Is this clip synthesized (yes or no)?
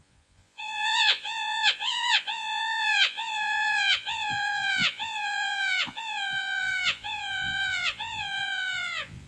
yes